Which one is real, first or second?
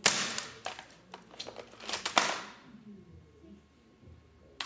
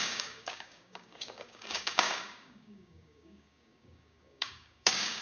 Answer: first